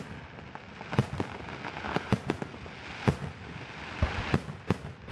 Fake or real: real